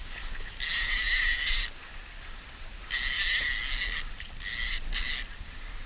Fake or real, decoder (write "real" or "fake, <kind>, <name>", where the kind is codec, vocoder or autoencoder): real